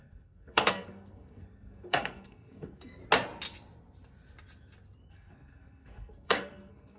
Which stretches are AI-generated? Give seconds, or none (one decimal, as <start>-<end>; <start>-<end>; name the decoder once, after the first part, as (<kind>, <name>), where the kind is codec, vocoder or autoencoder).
0.0-3.0 (codec, SNAC); 5.1-7.0